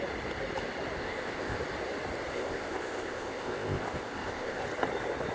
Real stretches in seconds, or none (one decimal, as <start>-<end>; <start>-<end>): 0.0-1.0; 1.6-2.3; 4.6-5.3